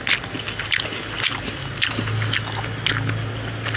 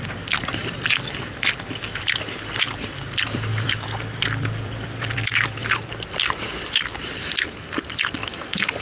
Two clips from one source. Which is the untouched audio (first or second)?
first